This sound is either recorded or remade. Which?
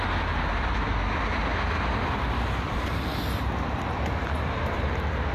recorded